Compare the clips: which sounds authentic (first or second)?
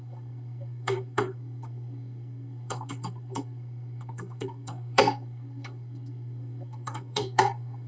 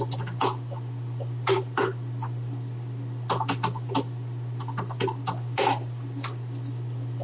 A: second